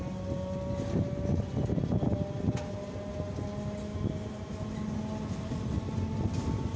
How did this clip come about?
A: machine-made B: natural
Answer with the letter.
B